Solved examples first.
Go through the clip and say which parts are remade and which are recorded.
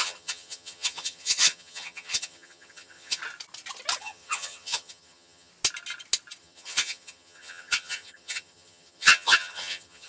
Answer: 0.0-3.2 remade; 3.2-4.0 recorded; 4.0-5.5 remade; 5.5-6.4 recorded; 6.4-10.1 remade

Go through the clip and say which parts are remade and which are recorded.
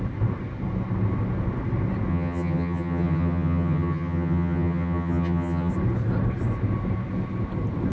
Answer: 0.0-2.1 recorded; 2.1-5.7 remade; 5.7-7.9 recorded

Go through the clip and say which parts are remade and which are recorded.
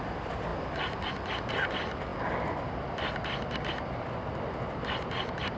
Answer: 0.0-5.6 recorded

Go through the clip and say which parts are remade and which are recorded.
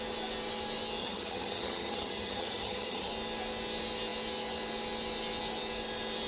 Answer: 0.0-1.0 recorded; 1.0-3.1 remade; 3.1-6.3 recorded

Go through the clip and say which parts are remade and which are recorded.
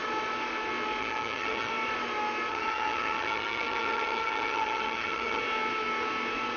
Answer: 0.0-1.0 recorded; 1.0-1.7 remade; 1.7-2.5 recorded; 2.5-5.4 remade; 5.4-6.6 recorded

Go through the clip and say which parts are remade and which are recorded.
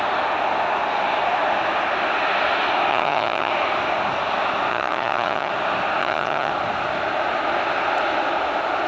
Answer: 0.0-2.9 recorded; 2.9-3.5 remade; 3.5-4.7 recorded; 4.7-5.5 remade; 5.5-6.0 recorded; 6.0-6.5 remade; 6.5-8.9 recorded